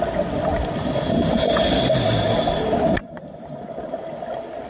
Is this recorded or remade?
recorded